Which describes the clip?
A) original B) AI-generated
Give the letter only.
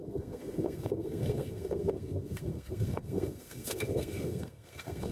B